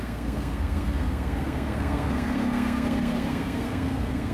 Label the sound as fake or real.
fake